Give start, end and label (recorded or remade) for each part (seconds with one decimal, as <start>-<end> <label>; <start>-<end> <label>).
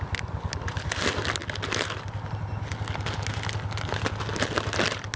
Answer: 0.0-5.2 recorded